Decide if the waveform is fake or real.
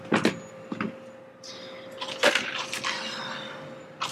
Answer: real